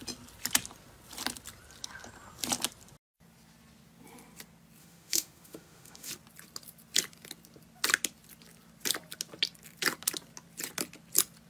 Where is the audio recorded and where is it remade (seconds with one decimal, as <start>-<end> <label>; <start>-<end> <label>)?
0.0-4.8 recorded; 4.8-6.1 remade; 6.1-11.5 recorded